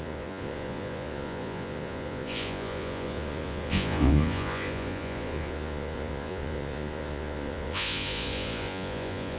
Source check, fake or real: fake